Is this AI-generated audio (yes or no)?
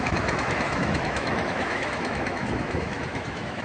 yes